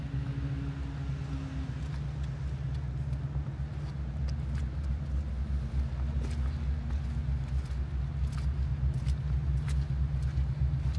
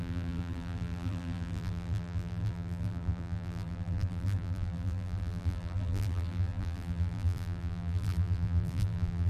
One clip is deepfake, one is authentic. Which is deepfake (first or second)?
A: second